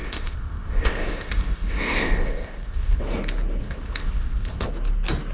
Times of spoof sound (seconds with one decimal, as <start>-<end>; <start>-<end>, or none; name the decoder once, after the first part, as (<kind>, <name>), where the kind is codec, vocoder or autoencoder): 0.0-3.0 (codec, ZipCodec); 3.6-4.7